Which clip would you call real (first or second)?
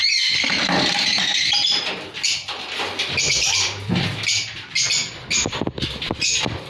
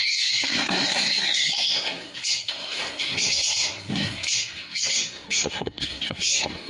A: first